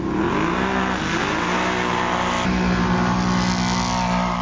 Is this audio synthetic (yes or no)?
no